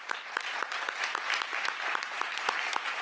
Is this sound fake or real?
fake